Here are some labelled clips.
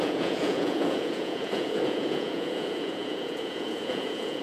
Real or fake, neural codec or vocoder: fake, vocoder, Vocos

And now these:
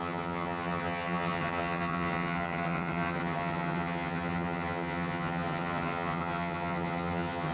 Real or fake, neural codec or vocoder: fake, vocoder, HiFi-GAN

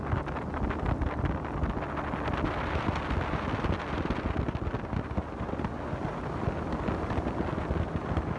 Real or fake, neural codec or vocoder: real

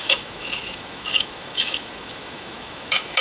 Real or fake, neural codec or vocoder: fake, autoencoder, DAC-VAE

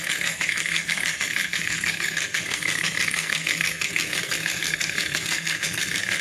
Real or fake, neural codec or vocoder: fake, codec, SNAC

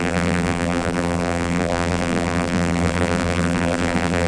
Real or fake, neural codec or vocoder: fake, vocoder, BigVGAN v2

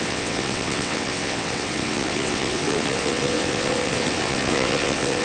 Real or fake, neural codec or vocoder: fake, vocoder, WaveNeXt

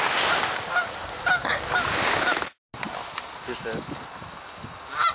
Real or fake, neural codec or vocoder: real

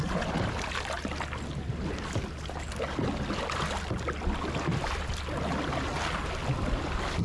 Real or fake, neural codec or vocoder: real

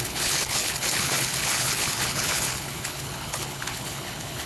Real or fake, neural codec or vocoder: fake, codec, HILCodec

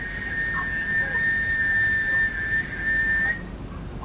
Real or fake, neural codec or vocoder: real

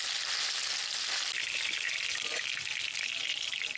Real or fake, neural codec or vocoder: real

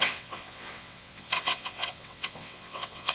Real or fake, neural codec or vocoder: fake, vocoder, WaveNeXt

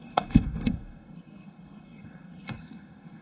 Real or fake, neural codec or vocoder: fake, codec, SNAC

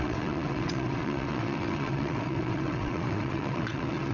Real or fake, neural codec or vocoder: fake, vocoder, WaveNeXt